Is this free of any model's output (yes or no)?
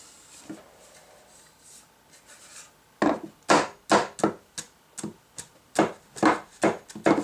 yes